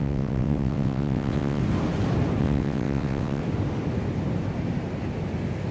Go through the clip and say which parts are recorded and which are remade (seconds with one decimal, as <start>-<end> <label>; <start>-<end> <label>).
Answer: 0.0-1.6 remade; 1.6-2.4 recorded; 2.4-3.4 remade; 3.4-5.7 recorded